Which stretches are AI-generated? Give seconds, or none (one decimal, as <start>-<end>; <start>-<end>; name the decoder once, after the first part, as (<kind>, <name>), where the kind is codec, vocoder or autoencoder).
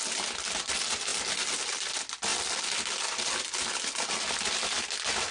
none